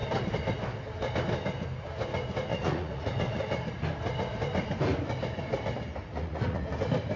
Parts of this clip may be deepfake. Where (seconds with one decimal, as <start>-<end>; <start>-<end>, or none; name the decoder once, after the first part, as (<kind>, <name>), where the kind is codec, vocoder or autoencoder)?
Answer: 2.5-3.4 (vocoder, Vocos); 6.1-6.6